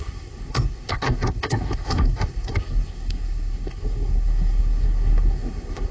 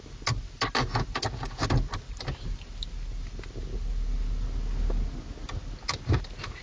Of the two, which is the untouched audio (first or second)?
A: second